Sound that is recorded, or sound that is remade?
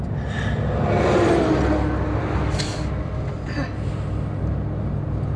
recorded